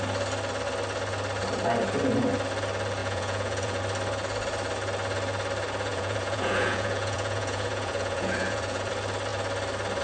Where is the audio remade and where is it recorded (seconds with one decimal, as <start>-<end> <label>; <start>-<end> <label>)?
0.0-3.0 recorded; 3.0-3.8 remade; 3.8-5.9 recorded; 5.9-8.9 remade; 8.9-10.0 recorded

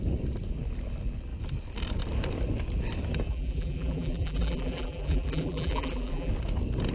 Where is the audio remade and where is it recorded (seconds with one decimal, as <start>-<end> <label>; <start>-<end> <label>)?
0.0-3.3 recorded; 3.3-6.3 remade; 6.3-6.9 recorded

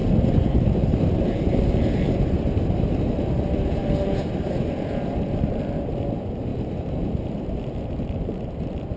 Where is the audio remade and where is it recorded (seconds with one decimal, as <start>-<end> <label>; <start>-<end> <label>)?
0.0-9.0 recorded

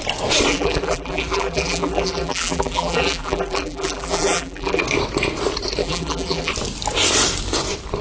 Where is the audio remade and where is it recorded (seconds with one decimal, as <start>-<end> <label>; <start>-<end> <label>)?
0.0-0.5 recorded; 0.5-4.8 remade; 4.8-5.8 recorded; 5.8-6.5 remade; 6.5-8.0 recorded